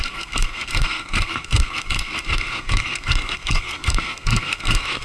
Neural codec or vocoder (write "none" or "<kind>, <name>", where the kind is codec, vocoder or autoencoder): codec, SNAC